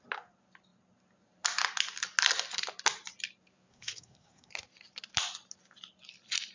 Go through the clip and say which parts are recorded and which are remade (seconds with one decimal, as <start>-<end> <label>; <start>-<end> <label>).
0.0-3.7 recorded; 3.7-4.5 remade; 4.5-6.5 recorded